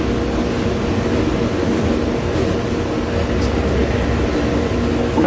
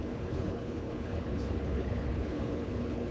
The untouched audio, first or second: first